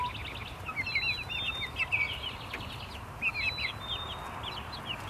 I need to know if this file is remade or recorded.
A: recorded